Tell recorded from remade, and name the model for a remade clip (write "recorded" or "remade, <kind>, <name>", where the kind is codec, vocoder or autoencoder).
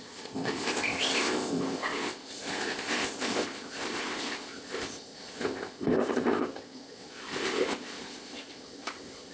remade, codec, ZipCodec